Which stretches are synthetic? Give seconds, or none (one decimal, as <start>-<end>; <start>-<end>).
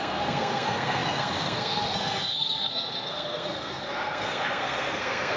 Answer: 0.0-5.4